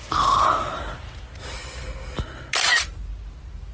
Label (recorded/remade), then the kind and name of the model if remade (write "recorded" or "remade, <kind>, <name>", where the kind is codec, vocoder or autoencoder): recorded